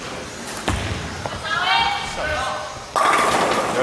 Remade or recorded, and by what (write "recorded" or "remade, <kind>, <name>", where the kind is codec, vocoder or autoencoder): recorded